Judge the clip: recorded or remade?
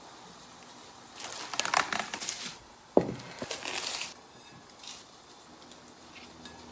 recorded